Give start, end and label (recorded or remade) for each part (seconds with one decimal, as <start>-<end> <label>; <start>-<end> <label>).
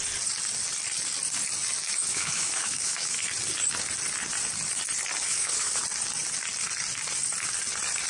0.0-2.0 recorded; 2.0-3.2 remade; 3.2-5.3 recorded; 5.3-5.8 remade; 5.8-8.1 recorded